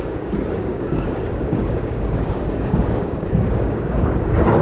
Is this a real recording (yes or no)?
no